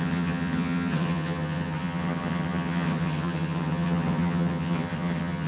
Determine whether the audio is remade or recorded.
remade